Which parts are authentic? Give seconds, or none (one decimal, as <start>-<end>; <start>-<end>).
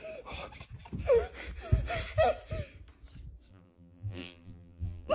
0.0-3.5